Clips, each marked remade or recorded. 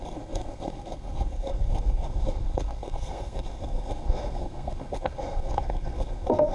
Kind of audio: remade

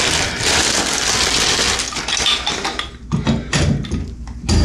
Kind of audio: recorded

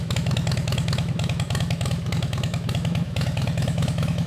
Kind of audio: remade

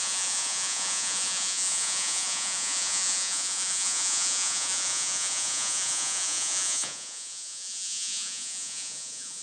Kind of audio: remade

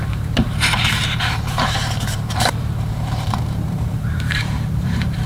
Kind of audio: remade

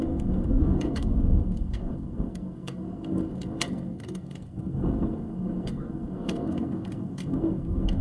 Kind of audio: remade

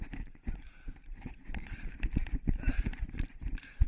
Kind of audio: remade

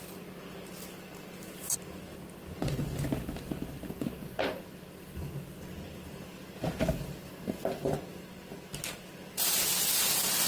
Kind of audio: recorded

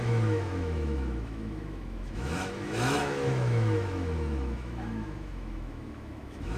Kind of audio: remade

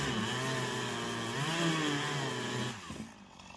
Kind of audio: recorded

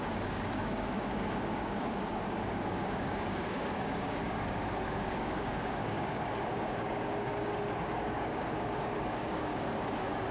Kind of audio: remade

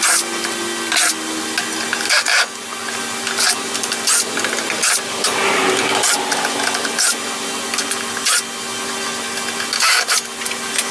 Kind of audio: recorded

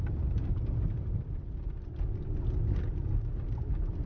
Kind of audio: remade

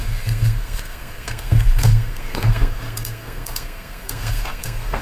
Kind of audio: remade